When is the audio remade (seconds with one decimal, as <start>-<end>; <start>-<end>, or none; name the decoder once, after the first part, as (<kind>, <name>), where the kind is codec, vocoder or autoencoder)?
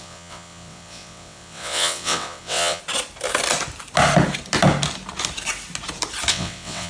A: 0.0-2.8 (vocoder, WaveNeXt); 6.3-6.9